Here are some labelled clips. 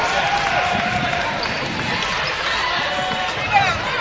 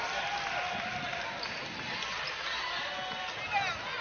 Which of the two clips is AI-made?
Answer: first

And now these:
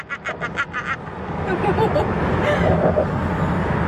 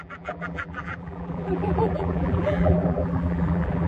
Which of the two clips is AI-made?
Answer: second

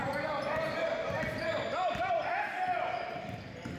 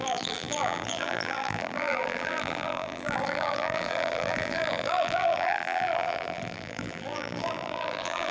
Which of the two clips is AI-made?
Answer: second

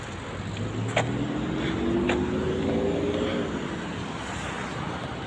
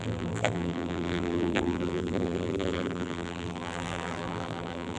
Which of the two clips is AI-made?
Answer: second